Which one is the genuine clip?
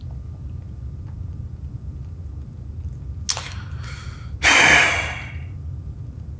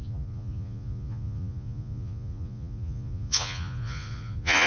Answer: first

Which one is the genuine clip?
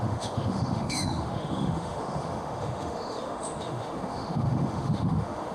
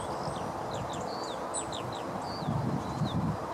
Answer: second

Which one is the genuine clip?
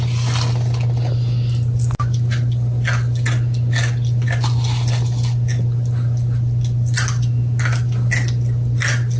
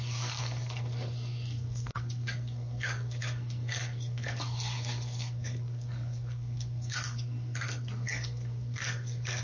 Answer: first